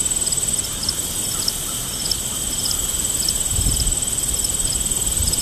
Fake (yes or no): no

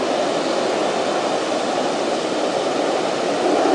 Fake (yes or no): no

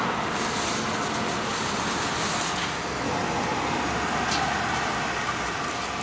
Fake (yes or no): no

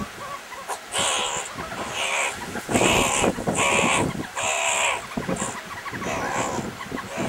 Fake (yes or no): no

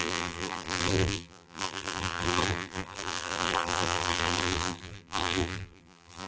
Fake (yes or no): yes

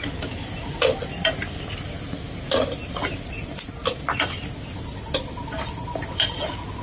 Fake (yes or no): no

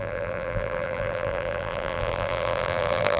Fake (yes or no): yes